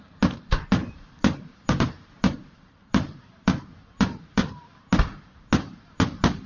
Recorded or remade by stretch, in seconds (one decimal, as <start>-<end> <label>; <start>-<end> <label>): 0.0-4.6 remade; 4.6-5.1 recorded; 5.1-6.5 remade